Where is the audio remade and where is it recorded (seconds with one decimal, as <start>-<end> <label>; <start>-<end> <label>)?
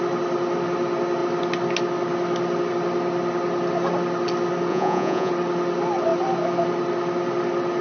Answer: 0.0-4.7 recorded; 4.7-5.3 remade; 5.3-7.8 recorded